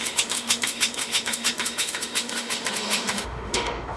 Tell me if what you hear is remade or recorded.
remade